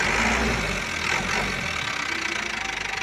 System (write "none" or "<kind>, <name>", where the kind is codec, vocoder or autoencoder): none